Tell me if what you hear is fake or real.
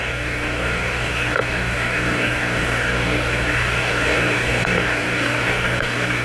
fake